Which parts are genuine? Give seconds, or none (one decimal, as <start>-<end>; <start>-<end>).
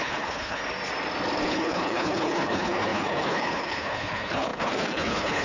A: 0.6-1.4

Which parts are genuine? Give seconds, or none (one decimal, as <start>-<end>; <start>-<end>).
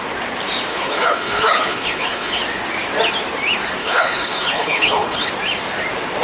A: 0.0-0.7; 2.4-3.8; 5.3-6.2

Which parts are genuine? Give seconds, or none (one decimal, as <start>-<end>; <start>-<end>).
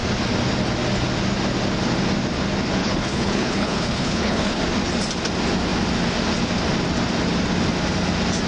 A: 0.0-2.8; 4.6-8.5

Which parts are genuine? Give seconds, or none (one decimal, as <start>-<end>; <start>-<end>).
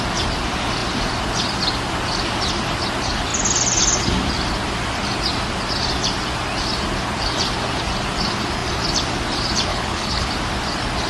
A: 0.0-9.7; 10.3-11.1